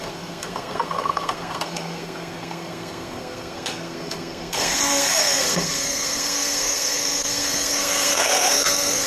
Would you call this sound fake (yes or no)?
yes